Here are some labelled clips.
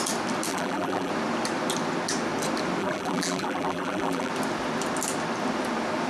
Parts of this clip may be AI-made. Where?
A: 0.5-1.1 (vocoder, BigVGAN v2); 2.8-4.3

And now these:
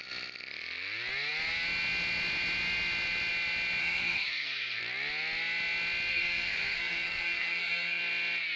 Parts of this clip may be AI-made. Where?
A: 3.8-4.8 (codec, SNAC); 6.1-8.0

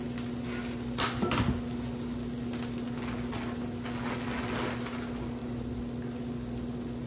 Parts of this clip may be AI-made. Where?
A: none